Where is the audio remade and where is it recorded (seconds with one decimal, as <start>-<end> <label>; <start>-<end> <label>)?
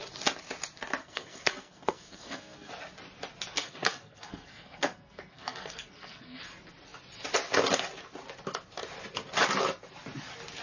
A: 0.0-1.0 recorded; 1.0-2.7 remade; 2.7-3.5 recorded; 3.5-6.4 remade; 6.4-10.6 recorded